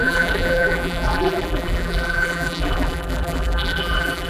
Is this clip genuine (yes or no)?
no